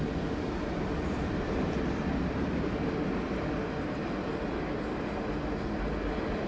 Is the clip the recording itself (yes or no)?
yes